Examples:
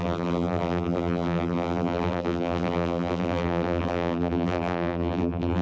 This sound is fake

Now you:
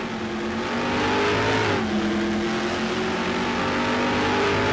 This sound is real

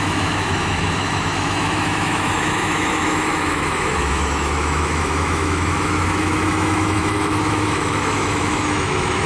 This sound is fake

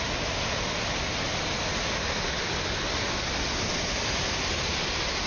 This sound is real